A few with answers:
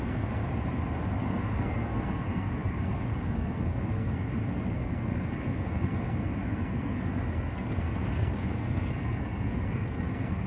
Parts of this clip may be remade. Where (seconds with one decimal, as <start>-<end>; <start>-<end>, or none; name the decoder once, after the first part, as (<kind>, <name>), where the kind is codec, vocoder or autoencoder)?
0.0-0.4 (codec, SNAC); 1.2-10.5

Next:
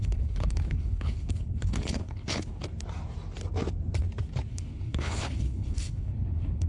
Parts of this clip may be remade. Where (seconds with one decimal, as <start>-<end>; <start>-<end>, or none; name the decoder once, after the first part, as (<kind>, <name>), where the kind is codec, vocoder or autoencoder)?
0.0-2.6 (codec, HILCodec); 4.5-6.7

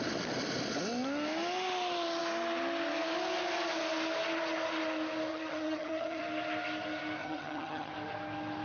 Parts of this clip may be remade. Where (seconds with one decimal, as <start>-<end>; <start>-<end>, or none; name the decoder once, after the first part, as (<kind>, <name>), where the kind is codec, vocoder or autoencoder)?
5.3-6.2 (vocoder, HiFi-GAN); 7.2-7.9

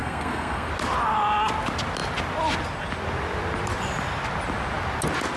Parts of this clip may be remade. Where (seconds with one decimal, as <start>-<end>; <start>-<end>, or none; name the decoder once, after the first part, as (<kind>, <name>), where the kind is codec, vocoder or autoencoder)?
0.0-0.7 (codec, SNAC)

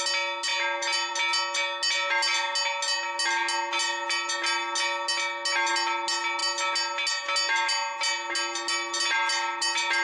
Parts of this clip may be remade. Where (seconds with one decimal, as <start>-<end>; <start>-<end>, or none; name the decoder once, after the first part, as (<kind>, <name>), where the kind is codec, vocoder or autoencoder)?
none